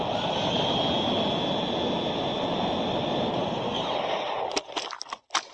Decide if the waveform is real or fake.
real